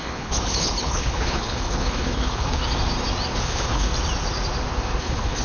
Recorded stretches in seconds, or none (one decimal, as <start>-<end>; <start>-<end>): 2.6-3.4; 3.9-5.0